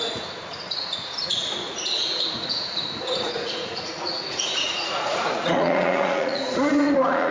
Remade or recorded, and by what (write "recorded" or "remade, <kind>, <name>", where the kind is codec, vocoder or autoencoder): remade, vocoder, Vocos